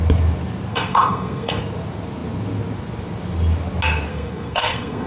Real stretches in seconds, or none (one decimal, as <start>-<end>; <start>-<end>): 0.0-0.7; 1.6-4.1